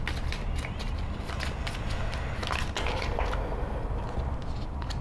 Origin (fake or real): real